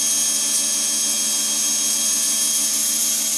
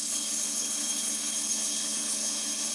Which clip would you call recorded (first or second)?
first